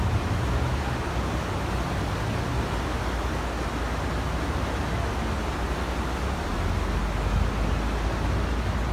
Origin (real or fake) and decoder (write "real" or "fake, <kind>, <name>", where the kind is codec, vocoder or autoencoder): real